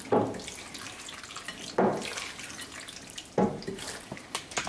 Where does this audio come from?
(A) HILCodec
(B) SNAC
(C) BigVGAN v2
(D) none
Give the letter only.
D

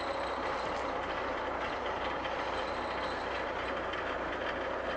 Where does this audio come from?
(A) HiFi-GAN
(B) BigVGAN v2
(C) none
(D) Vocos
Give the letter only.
C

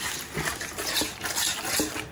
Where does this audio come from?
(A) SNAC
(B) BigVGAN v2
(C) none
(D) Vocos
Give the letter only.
C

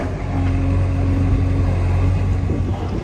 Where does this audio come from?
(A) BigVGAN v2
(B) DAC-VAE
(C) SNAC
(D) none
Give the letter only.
D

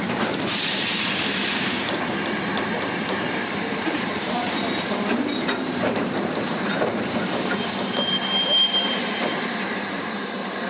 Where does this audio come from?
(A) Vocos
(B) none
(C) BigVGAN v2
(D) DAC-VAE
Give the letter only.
C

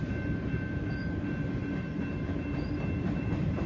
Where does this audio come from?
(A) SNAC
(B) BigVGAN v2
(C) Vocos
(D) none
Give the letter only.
B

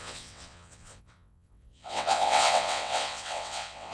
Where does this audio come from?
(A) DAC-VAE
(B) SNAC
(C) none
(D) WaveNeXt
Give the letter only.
D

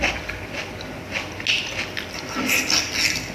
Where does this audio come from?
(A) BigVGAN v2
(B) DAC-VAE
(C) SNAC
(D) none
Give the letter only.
D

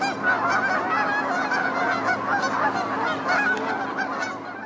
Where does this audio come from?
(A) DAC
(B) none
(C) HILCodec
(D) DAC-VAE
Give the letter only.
B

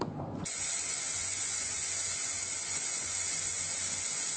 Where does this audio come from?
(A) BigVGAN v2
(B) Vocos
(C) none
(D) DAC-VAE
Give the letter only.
B